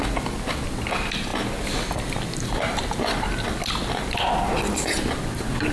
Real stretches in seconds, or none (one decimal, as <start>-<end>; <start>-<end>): 0.0-5.7